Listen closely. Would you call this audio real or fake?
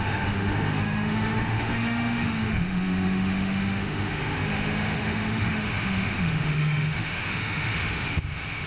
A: fake